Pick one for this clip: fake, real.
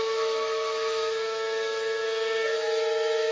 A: fake